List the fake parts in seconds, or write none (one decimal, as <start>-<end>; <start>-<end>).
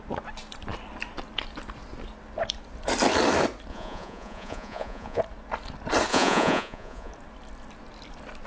3.7-5.2; 6.1-7.1